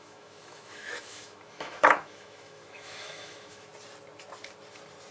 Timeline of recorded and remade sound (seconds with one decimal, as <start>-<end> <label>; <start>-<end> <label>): 0.0-3.7 remade; 3.7-5.1 recorded